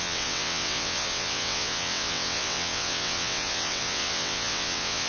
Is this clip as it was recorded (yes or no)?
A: no